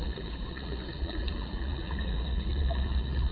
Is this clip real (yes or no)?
no